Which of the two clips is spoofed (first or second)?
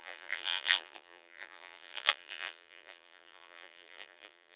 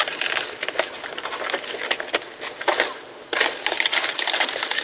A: first